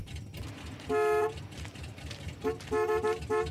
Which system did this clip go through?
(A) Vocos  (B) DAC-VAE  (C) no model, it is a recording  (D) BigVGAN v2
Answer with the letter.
C